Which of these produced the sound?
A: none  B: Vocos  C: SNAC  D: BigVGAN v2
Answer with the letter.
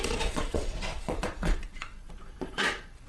B